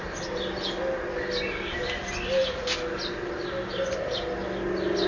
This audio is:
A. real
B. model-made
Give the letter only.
A